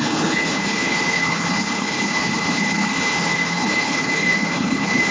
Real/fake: fake